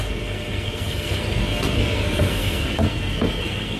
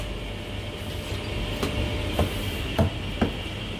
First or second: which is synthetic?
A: first